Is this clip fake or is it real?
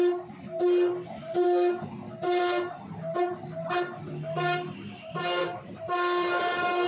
real